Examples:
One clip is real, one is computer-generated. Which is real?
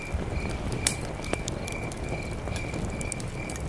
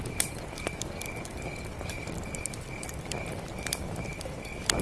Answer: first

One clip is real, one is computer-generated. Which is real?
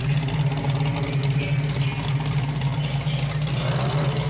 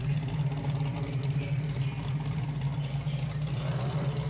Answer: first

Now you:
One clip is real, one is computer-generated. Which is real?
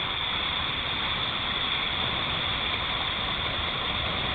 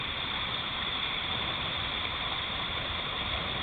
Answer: first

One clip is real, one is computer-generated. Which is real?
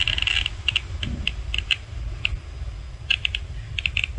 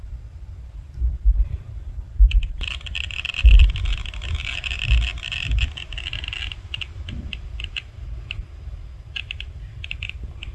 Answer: first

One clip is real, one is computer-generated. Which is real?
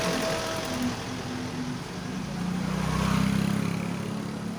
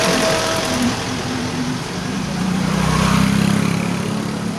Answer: first